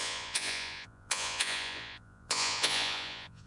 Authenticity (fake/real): fake